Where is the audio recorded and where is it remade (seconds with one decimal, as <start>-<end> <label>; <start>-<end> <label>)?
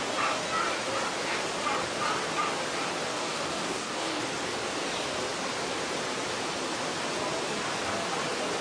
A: 0.0-3.1 recorded; 3.1-4.2 remade; 4.2-8.6 recorded